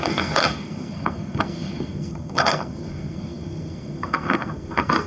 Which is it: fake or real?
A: fake